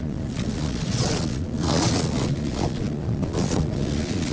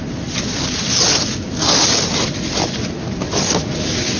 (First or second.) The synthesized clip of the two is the first